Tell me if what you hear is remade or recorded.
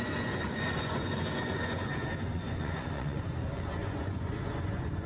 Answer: remade